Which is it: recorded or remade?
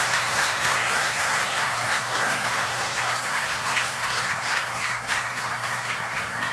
remade